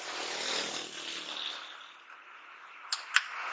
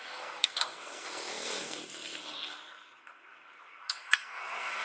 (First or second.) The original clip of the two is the first